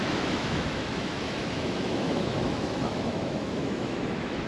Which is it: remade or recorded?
remade